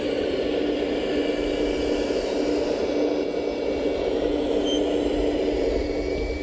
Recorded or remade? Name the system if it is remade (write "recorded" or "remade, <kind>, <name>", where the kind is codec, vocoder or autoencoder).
recorded